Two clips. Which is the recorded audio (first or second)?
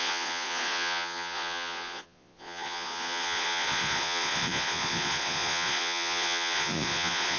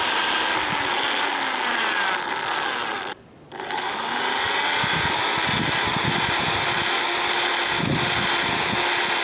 second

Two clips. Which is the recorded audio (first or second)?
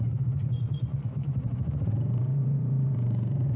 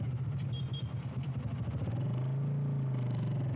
second